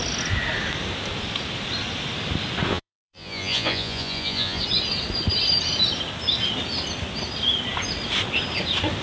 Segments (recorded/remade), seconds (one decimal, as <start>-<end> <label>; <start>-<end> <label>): 0.0-2.7 recorded; 2.7-4.6 remade; 4.6-9.0 recorded